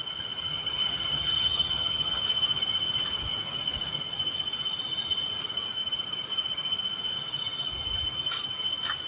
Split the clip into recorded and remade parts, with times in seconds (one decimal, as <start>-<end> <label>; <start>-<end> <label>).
0.0-0.5 recorded; 0.5-2.2 remade; 2.2-9.1 recorded